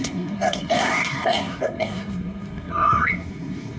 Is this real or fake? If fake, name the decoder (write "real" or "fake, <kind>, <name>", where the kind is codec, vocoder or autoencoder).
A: fake, codec, SNAC